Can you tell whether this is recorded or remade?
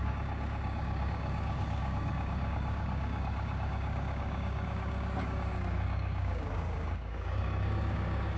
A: remade